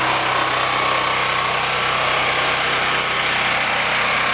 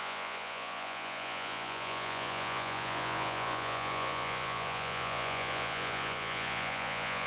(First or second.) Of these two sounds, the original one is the first